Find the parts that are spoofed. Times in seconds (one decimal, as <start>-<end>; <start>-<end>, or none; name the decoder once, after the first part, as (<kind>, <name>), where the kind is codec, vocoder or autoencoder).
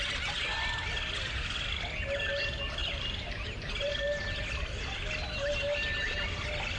2.8-3.9 (vocoder, BigVGAN v2)